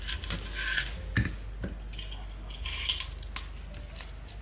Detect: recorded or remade recorded